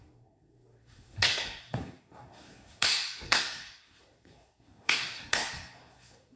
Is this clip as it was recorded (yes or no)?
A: no